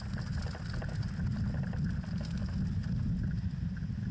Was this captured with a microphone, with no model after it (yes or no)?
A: yes